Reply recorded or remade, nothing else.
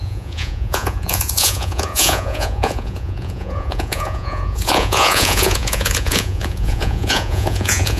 remade